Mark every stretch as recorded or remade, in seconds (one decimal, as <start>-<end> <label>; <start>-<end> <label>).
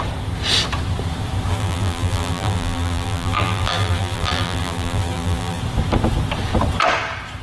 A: 0.0-1.5 recorded; 1.5-5.6 remade; 5.6-7.4 recorded